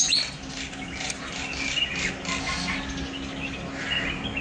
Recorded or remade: recorded